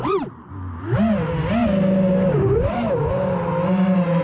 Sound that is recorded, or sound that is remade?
recorded